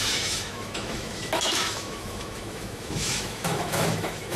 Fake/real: fake